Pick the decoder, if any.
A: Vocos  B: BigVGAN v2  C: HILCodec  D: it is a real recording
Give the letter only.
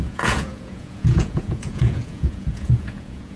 A